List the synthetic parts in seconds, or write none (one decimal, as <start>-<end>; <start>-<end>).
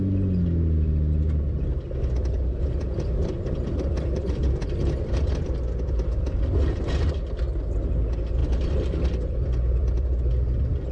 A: 2.2-7.4; 8.4-10.3